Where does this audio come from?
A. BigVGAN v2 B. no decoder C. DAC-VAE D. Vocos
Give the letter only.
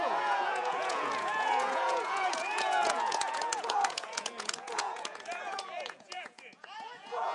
D